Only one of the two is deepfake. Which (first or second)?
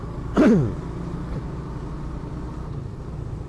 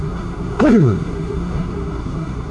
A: second